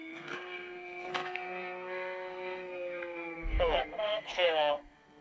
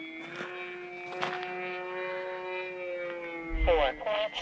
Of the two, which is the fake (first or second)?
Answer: first